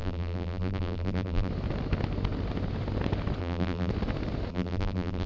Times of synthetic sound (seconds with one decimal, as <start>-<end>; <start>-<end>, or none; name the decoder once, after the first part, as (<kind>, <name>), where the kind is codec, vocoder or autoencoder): 0.0-1.5 (vocoder, BigVGAN v2); 3.4-3.9; 4.5-5.3

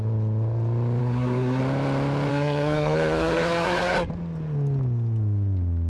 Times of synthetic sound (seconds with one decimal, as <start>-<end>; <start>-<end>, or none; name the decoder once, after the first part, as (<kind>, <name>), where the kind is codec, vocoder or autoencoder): 1.0-1.6 (codec, SNAC); 2.3-4.1

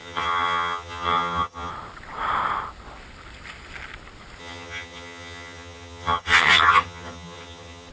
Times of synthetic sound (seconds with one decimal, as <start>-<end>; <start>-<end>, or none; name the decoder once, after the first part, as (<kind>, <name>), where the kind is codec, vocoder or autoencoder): 0.0-1.7 (vocoder, HiFi-GAN); 4.4-7.9

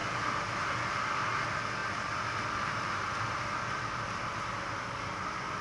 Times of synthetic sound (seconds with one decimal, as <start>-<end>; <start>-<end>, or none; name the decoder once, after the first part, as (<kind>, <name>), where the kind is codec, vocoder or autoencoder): none

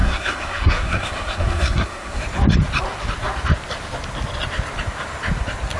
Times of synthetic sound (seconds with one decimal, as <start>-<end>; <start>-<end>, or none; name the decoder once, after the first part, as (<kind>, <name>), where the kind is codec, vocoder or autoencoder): 0.0-2.2 (codec, SNAC)

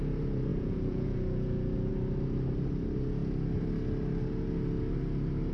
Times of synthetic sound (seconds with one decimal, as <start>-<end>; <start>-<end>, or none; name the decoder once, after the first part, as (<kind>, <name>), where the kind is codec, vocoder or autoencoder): 0.5-1.9 (vocoder, Vocos)